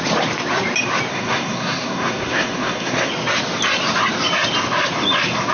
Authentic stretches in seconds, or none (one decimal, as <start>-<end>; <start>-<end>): 0.0-1.1; 3.1-5.5